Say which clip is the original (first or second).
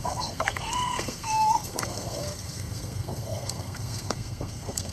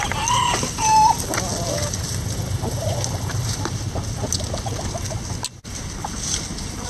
second